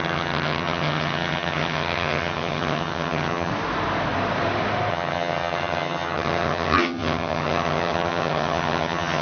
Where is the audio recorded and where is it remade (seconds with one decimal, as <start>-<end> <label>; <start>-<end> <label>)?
0.0-3.5 remade; 3.5-4.9 recorded; 4.9-9.2 remade